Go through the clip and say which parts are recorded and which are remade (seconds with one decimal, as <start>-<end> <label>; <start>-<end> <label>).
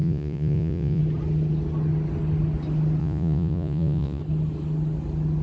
0.0-1.0 remade; 1.0-3.0 recorded; 3.0-4.2 remade; 4.2-5.4 recorded